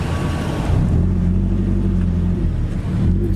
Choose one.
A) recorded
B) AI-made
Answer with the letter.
A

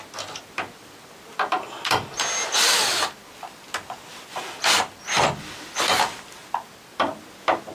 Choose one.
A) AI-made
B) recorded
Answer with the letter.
B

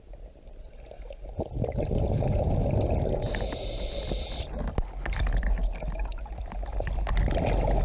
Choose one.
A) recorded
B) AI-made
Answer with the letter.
A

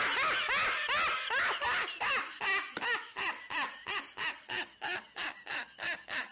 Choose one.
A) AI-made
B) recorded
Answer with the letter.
B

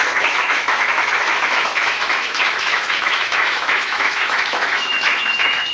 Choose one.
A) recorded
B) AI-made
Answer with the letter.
B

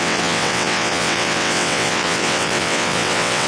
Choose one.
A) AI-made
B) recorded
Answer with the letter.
A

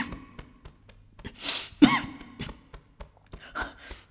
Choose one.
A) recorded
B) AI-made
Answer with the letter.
A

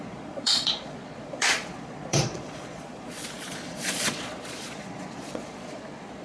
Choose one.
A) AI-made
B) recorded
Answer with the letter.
A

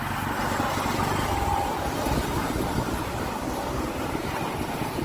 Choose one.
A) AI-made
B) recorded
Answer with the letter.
B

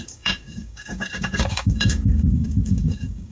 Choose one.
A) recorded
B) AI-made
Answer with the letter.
B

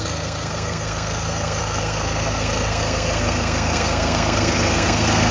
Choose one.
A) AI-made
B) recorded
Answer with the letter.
A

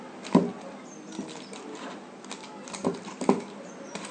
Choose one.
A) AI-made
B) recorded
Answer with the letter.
B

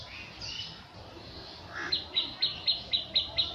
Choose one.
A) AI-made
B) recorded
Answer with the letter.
B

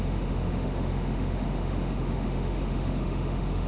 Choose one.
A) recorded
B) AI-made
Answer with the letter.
B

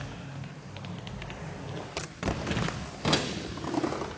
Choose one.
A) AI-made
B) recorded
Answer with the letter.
B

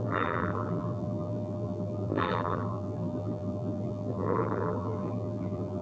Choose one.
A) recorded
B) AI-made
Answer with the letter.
B